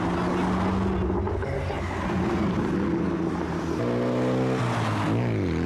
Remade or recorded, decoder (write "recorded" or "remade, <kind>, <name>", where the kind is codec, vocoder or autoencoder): recorded